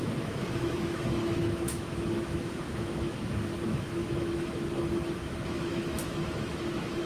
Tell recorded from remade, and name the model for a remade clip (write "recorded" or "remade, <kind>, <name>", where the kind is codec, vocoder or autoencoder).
remade, autoencoder, DAC-VAE